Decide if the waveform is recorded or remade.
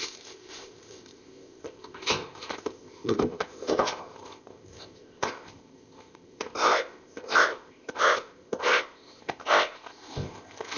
remade